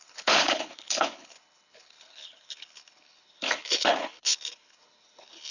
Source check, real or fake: fake